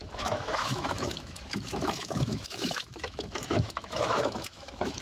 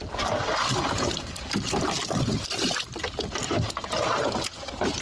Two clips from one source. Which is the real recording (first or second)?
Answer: second